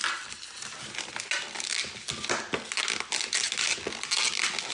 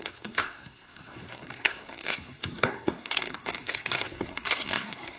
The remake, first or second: second